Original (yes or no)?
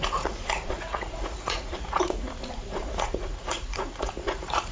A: no